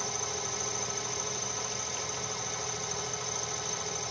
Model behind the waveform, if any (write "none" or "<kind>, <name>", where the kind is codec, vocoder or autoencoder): none